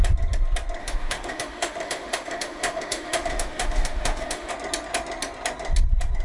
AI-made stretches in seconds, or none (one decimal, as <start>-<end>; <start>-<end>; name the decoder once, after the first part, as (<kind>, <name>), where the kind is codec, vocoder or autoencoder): 0.8-4.5 (autoencoder, DAC-VAE)